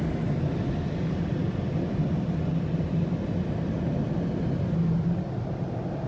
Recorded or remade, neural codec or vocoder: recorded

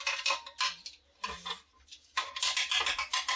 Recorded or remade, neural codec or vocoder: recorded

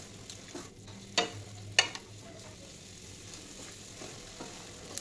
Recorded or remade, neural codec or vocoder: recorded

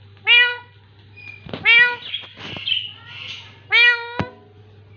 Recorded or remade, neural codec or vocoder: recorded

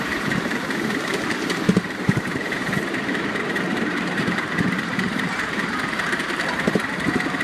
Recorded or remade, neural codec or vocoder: remade, vocoder, BigVGAN v2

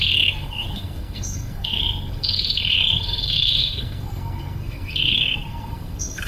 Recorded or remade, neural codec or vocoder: remade, codec, SNAC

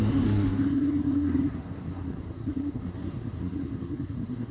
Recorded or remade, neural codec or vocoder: remade, codec, SNAC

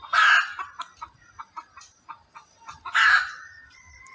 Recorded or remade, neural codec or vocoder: recorded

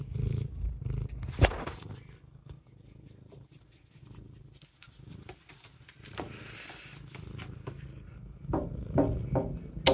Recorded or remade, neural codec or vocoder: recorded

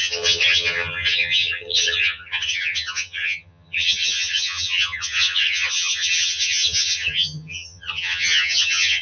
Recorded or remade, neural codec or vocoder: remade, vocoder, HiFi-GAN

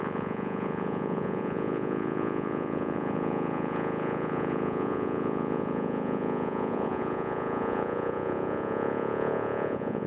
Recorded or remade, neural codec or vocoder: remade, vocoder, Vocos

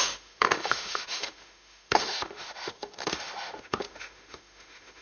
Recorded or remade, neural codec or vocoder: remade, autoencoder, DAC-VAE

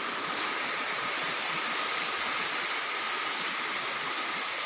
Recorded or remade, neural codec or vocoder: recorded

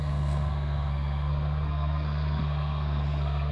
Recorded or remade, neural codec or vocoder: remade, codec, SNAC